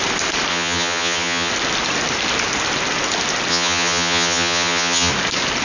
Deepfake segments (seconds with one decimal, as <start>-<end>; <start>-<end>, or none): 0.5-1.5; 3.5-5.1